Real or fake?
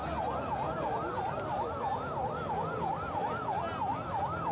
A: real